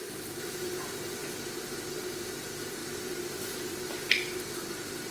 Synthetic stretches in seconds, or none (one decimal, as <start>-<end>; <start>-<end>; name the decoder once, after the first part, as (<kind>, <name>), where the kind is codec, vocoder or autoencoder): 2.8-3.9 (vocoder, BigVGAN v2)